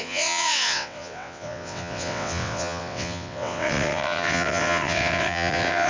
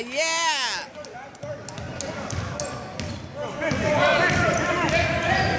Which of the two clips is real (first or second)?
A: second